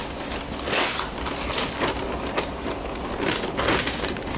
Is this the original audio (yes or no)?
yes